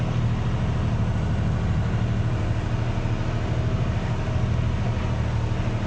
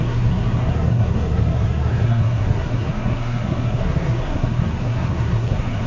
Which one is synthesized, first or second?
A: second